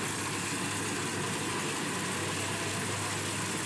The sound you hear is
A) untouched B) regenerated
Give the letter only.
A